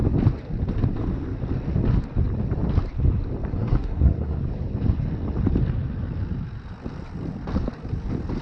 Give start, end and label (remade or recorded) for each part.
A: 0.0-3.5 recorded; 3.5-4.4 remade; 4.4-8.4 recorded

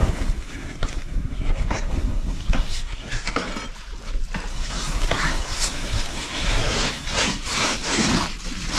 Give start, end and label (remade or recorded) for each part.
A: 0.0-3.5 remade; 3.5-4.5 recorded; 4.5-8.1 remade; 8.1-8.8 recorded